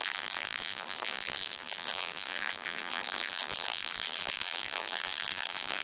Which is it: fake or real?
fake